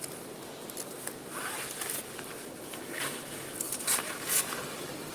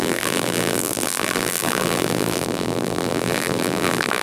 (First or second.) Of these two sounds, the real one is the first